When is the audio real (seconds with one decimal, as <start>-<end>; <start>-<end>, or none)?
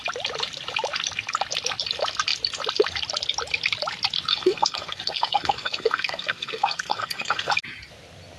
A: 0.0-4.3; 7.5-8.4